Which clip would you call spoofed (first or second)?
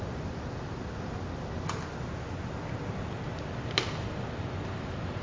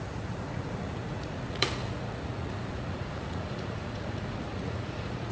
second